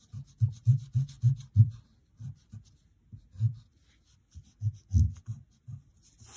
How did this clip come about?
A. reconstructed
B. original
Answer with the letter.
B